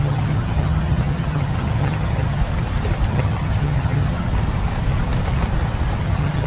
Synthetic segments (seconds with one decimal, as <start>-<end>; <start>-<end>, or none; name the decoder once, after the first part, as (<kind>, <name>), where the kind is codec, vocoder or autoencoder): 0.0-2.4 (vocoder, HiFi-GAN); 3.1-4.3; 6.0-6.5